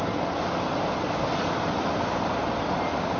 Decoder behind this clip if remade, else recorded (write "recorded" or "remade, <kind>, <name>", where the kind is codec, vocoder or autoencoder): recorded